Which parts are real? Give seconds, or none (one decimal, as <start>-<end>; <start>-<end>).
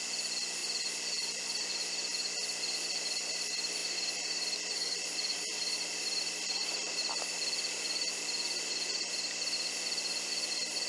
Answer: 0.0-3.8; 7.0-10.9